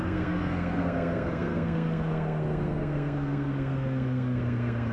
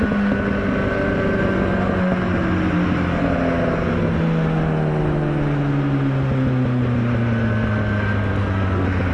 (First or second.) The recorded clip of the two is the second